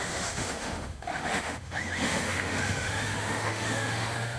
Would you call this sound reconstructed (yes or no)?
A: yes